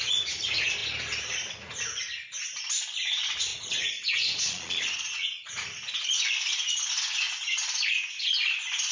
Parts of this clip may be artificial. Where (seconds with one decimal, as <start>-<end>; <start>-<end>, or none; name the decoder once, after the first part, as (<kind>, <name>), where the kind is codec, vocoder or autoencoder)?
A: 3.5-5.5 (vocoder, Vocos)